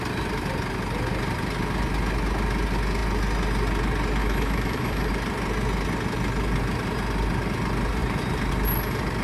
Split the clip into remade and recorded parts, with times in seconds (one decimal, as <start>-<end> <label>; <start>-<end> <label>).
0.0-4.2 recorded; 4.2-5.1 remade; 5.1-9.2 recorded